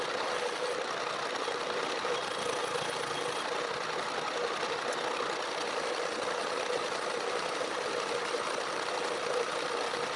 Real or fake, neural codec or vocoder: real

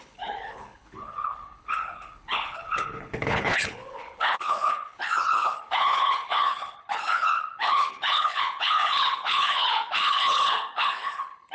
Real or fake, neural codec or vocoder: fake, codec, HILCodec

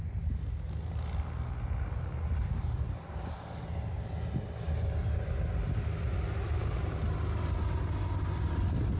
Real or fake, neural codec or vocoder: real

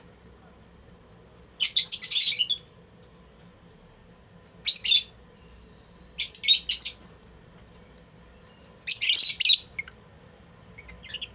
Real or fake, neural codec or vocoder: real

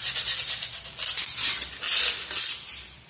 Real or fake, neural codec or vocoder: real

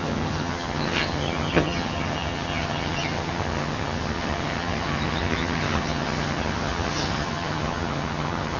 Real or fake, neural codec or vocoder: fake, vocoder, HiFi-GAN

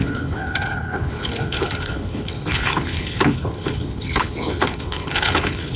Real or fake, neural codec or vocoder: fake, codec, HILCodec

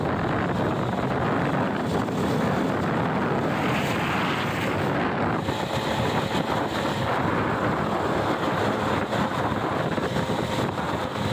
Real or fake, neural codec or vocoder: real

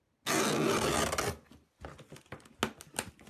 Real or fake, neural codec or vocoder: real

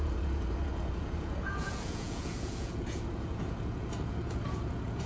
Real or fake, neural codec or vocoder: fake, vocoder, Vocos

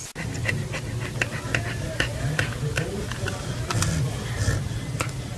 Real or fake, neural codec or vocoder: real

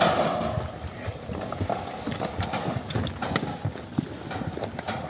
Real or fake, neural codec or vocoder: real